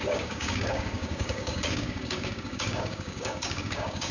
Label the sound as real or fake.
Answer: fake